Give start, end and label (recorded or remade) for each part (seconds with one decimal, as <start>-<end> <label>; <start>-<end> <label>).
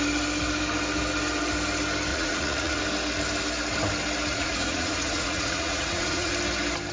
0.0-2.1 recorded; 2.1-2.8 remade; 2.8-4.3 recorded; 4.3-6.3 remade; 6.3-6.9 recorded